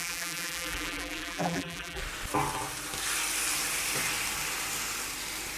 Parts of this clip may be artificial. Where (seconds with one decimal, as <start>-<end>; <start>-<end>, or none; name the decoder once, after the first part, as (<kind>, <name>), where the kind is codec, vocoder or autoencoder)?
0.0-2.0 (vocoder, BigVGAN v2)